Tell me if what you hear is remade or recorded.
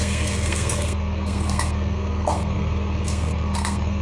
remade